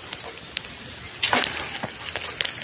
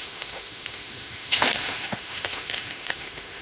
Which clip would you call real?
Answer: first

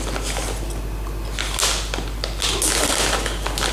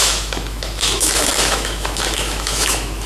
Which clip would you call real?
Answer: first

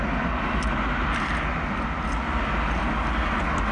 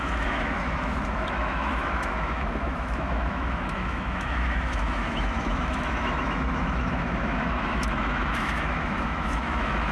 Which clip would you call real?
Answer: first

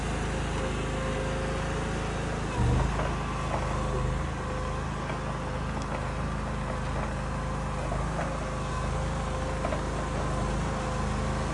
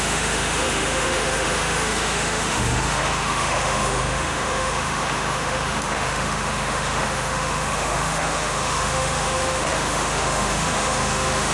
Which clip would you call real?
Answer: first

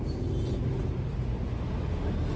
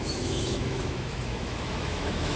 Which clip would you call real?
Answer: first